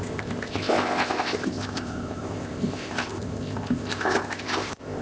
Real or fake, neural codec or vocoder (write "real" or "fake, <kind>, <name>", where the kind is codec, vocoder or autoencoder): fake, codec, ZipCodec